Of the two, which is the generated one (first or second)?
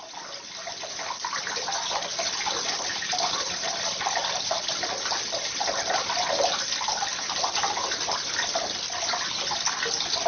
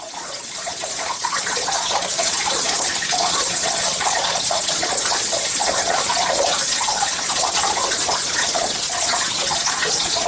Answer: second